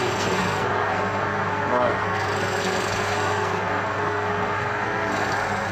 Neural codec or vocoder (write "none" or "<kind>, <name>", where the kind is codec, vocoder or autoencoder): codec, SNAC